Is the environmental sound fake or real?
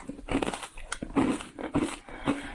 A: real